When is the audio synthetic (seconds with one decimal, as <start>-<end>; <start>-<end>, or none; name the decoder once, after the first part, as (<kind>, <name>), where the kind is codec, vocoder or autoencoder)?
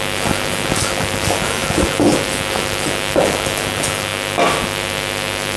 none